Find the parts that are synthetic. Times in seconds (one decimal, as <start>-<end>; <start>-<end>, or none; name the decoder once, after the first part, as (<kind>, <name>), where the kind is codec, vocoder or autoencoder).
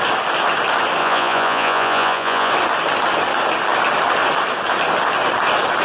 1.0-2.5 (vocoder, Vocos)